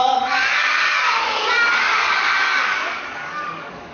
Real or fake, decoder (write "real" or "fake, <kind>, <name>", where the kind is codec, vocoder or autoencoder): fake, codec, DAC